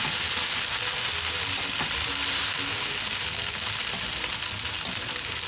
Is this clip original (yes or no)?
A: yes